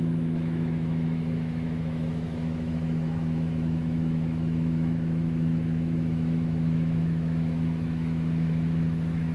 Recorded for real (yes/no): no